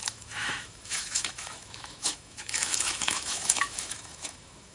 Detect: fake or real fake